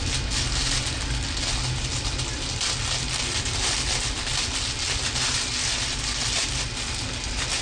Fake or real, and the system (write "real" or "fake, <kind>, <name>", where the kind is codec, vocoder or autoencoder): real